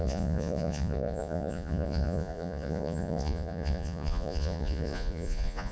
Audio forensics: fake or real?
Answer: fake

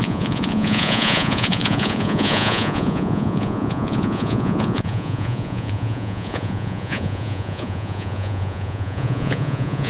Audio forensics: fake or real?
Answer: fake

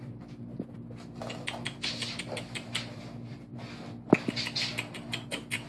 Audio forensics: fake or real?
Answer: real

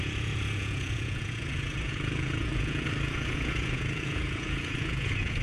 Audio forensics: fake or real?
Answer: fake